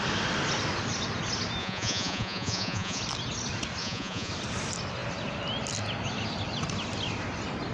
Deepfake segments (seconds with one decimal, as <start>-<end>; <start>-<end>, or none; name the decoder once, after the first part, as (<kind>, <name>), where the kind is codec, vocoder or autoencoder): 1.6-3.0 (vocoder, Vocos); 3.8-4.3